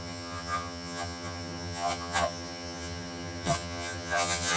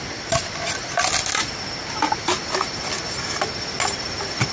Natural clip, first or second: second